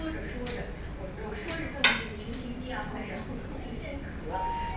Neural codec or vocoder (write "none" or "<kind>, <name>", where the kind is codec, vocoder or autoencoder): none